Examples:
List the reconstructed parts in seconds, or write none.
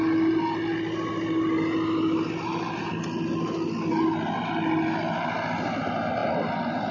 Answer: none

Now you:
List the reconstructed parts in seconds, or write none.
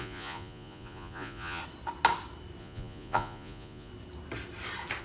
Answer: 0.0-1.6 (vocoder, Vocos); 2.6-3.9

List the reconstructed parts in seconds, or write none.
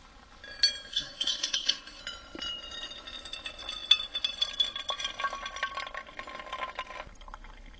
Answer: 0.9-2.0 (codec, SNAC)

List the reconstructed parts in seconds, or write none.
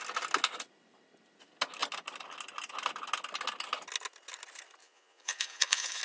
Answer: 4.8-6.0 (vocoder, Vocos)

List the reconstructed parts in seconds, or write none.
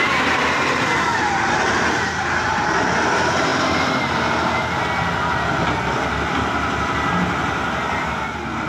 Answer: none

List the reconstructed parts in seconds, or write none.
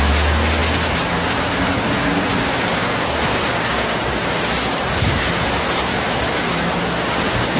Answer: none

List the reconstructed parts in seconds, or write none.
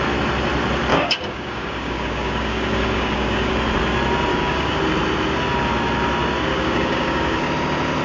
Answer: 0.9-3.5 (codec, DAC); 4.3-4.8; 6.5-7.5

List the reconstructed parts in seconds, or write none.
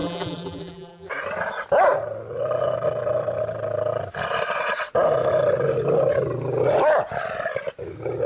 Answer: 0.0-1.1 (vocoder, BigVGAN v2)